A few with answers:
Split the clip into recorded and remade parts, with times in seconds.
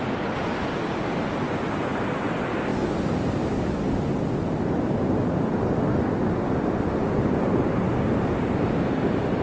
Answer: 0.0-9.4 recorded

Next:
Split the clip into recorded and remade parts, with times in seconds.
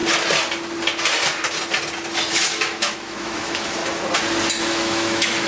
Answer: 0.0-2.3 recorded; 2.3-3.8 remade; 3.8-4.6 recorded; 4.6-5.5 remade